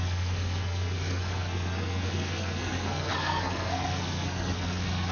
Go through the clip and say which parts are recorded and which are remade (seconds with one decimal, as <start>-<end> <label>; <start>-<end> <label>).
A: 0.0-5.1 remade